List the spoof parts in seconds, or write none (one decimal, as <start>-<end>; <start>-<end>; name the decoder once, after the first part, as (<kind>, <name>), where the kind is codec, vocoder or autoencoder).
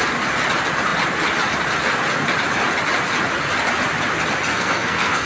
4.5-5.3 (codec, SNAC)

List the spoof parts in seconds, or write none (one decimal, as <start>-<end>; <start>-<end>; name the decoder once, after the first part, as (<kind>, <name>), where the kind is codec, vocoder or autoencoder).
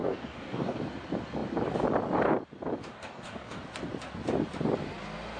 0.0-0.8 (codec, DAC); 2.8-3.6